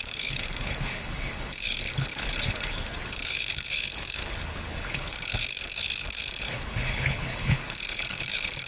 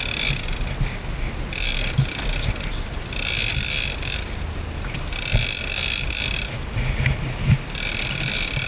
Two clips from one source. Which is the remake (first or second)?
first